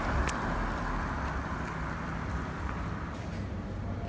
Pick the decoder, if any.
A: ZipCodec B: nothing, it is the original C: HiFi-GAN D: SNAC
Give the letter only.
B